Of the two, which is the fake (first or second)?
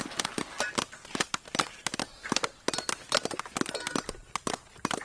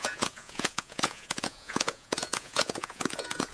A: second